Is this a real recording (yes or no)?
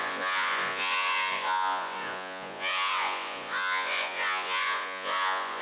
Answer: no